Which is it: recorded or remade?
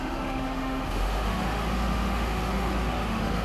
remade